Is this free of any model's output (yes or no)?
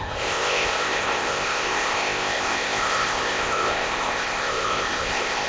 no